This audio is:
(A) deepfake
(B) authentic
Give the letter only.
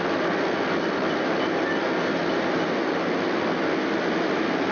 B